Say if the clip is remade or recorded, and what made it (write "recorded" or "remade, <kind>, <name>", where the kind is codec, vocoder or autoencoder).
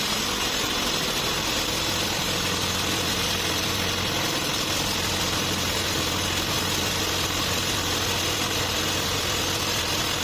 remade, vocoder, BigVGAN v2